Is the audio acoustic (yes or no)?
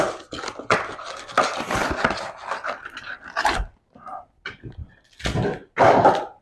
yes